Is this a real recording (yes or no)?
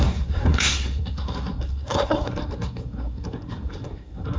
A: no